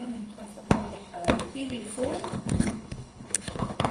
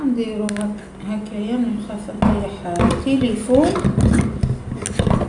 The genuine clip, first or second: second